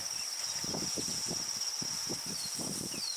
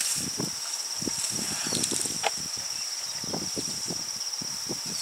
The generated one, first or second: second